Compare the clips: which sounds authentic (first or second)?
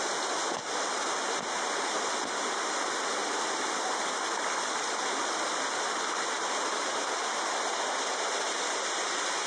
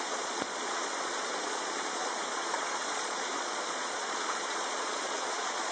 first